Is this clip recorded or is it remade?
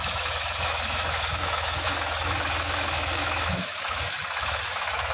remade